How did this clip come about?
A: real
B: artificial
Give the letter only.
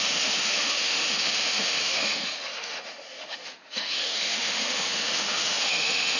B